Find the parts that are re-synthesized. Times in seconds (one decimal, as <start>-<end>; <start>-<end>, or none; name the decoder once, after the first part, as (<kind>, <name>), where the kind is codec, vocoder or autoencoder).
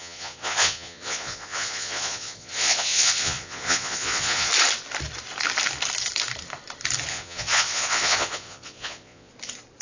0.0-4.5 (vocoder, Vocos); 7.1-9.3